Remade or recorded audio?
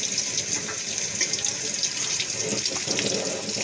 recorded